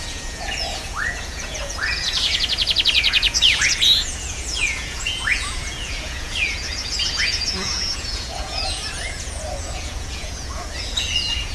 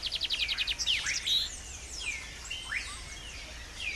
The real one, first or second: second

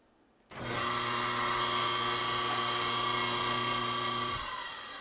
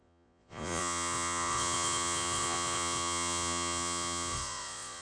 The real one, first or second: first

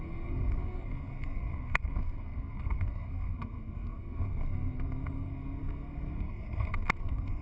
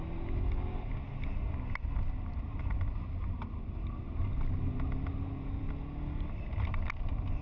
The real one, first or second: second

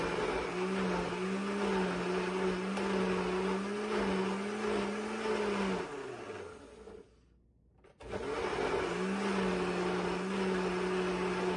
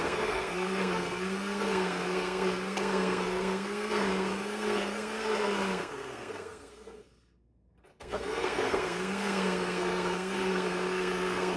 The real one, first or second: first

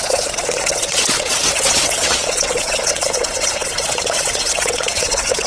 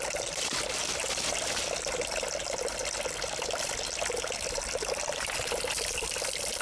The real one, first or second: second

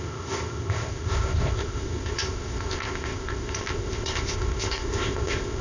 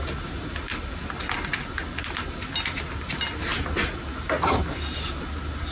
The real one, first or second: second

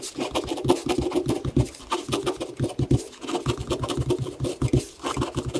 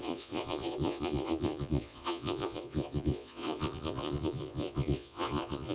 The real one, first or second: first